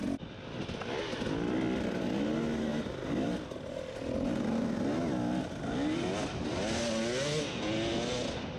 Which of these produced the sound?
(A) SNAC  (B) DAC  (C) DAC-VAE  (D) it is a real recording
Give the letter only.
D